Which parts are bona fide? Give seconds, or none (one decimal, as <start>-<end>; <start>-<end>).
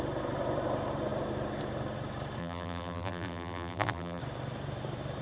0.0-2.4; 4.2-5.2